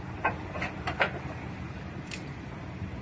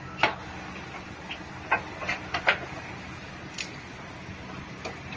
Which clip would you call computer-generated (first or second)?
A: first